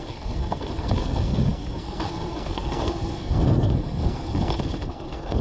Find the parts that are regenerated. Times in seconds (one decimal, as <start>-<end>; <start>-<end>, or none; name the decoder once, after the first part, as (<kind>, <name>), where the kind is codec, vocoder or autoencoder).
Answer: 0.0-5.4 (codec, SNAC)